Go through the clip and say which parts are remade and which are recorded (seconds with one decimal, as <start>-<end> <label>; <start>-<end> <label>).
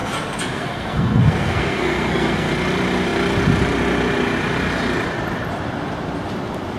0.0-2.5 remade; 2.5-6.8 recorded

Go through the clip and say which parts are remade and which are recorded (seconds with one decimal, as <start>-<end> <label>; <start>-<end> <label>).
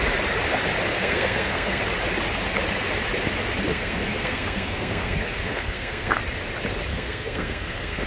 0.0-0.9 recorded; 0.9-1.8 remade; 1.8-3.7 recorded; 3.7-6.2 remade; 6.2-6.9 recorded; 6.9-8.1 remade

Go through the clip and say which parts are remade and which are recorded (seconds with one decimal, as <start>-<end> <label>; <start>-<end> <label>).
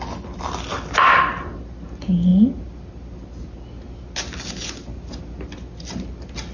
0.0-6.5 recorded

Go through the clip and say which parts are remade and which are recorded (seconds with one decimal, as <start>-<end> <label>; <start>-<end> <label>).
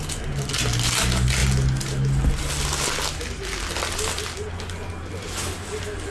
0.0-6.1 recorded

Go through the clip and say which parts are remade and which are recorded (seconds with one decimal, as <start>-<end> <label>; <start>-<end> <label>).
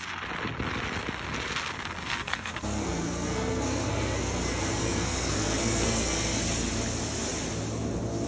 0.0-2.0 recorded; 2.0-6.4 remade; 6.4-8.3 recorded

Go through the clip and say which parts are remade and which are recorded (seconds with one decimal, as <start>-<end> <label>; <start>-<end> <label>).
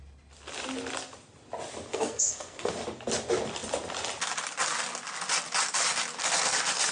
0.0-1.9 recorded; 1.9-2.7 remade; 2.7-6.9 recorded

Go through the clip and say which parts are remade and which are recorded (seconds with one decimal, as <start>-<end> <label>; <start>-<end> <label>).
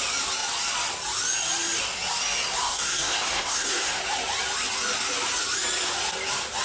0.0-2.6 recorded; 2.6-4.0 remade; 4.0-6.6 recorded